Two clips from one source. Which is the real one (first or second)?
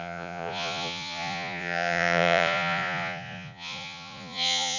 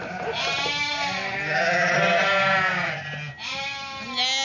second